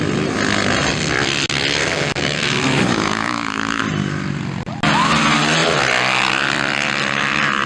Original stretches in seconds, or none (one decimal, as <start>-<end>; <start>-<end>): 0.0-1.8; 3.8-7.7